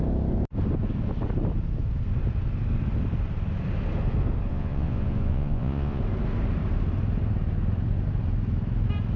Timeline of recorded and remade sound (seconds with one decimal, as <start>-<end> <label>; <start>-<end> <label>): 0.0-4.5 recorded; 4.5-6.0 remade; 6.0-9.2 recorded